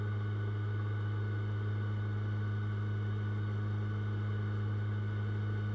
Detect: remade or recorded recorded